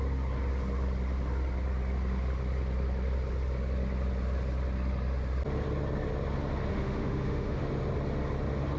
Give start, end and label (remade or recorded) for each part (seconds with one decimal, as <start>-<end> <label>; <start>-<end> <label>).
0.0-6.7 recorded; 6.7-7.6 remade; 7.6-8.8 recorded